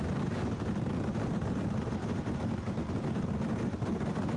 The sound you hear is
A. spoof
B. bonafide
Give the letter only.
B